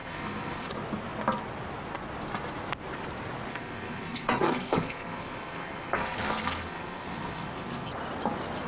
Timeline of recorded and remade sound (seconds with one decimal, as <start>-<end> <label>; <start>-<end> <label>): 0.0-0.7 remade; 0.7-3.5 recorded; 3.5-7.9 remade; 7.9-8.7 recorded